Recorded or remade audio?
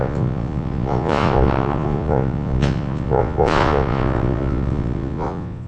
remade